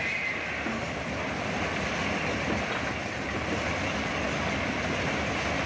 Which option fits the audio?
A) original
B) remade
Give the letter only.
A